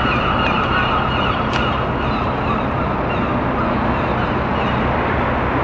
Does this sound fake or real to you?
real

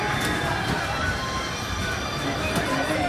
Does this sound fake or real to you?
real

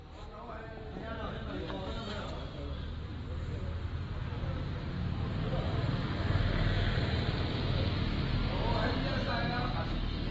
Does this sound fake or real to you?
real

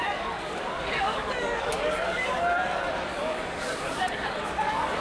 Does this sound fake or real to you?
fake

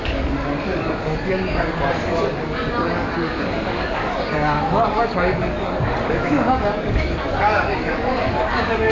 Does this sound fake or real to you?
fake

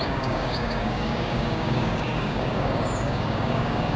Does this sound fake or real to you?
fake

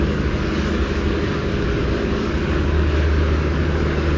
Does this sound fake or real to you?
fake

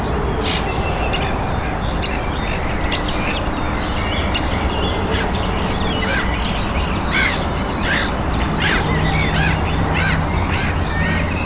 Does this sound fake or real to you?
real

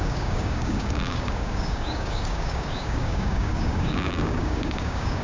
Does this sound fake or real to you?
fake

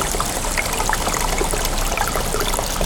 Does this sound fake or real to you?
real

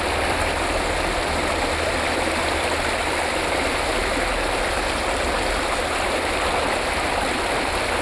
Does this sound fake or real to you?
real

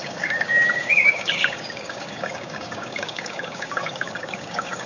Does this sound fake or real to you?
fake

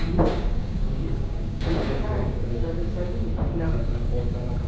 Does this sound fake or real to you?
fake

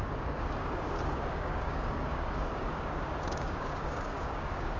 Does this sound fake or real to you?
fake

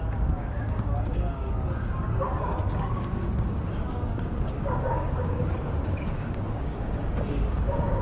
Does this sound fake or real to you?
fake